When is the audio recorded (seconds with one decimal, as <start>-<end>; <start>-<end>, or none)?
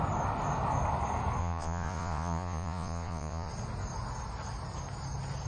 0.0-1.4; 3.5-5.5